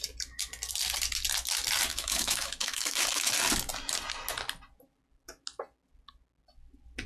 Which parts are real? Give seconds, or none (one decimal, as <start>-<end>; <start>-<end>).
0.0-1.9; 3.3-7.1